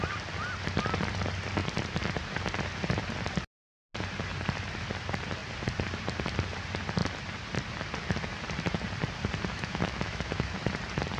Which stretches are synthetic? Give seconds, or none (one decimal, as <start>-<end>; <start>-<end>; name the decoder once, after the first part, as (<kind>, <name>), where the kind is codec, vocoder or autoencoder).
9.5-10.7 (autoencoder, DAC-VAE)